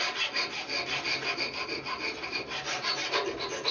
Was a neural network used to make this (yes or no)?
no